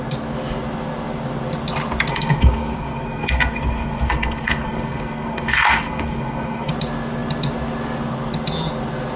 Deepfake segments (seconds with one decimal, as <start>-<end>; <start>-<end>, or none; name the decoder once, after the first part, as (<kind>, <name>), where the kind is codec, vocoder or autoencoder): 2.1-6.7 (codec, SNAC)